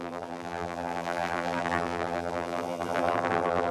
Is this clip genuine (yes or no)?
no